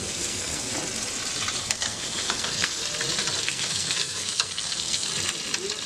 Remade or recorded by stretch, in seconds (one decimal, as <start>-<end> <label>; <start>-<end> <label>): 0.0-0.7 remade; 0.7-1.6 recorded; 1.6-2.8 remade; 2.8-3.4 recorded; 3.4-5.1 remade; 5.1-5.9 recorded